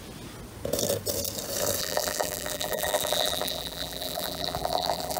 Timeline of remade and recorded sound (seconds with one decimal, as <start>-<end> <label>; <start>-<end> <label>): 0.0-1.8 recorded; 1.8-5.2 remade